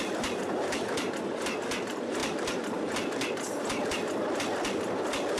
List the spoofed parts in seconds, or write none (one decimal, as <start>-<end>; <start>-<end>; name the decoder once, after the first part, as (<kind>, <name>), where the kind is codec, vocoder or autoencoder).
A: none